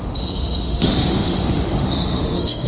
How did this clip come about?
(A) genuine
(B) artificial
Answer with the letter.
B